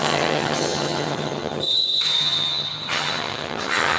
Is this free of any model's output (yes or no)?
no